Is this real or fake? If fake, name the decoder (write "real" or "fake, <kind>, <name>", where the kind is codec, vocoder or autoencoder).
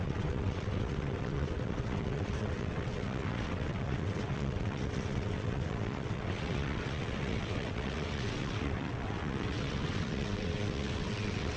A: fake, vocoder, WaveNeXt